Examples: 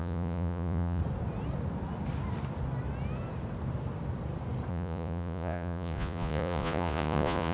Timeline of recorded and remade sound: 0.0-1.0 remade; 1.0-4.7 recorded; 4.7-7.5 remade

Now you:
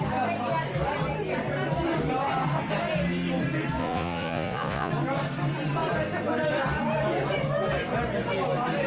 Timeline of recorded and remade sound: 0.0-3.8 recorded; 3.8-4.9 remade; 4.9-8.9 recorded

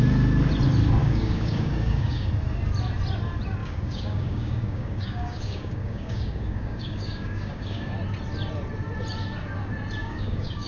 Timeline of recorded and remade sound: 0.0-1.0 recorded; 1.0-2.3 remade; 2.3-3.6 recorded; 3.6-7.9 remade; 7.9-10.0 recorded; 10.0-10.7 remade

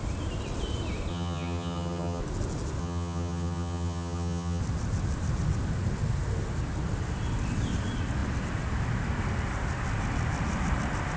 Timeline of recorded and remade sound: 0.0-1.1 recorded; 1.1-2.2 remade; 2.2-2.8 recorded; 2.8-4.6 remade; 4.6-11.2 recorded

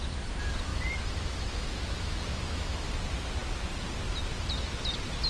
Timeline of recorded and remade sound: 0.0-0.7 recorded; 0.7-2.9 remade; 2.9-5.3 recorded

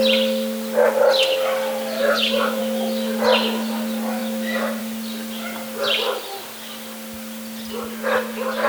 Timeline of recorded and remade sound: 0.0-2.0 recorded; 2.0-2.6 remade; 2.6-8.7 recorded